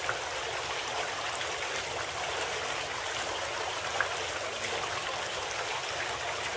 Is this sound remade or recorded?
recorded